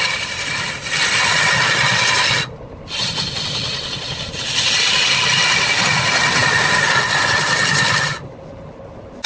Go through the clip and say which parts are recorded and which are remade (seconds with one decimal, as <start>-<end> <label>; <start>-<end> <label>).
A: 0.0-9.3 recorded